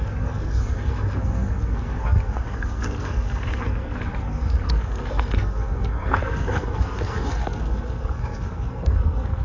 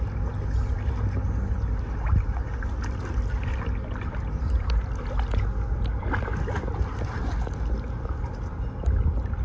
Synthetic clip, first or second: first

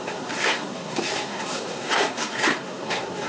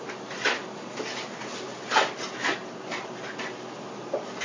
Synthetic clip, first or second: first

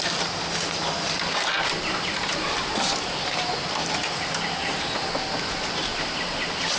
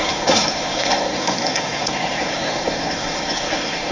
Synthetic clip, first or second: second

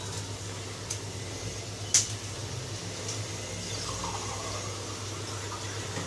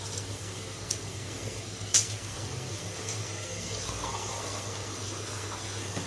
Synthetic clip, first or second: second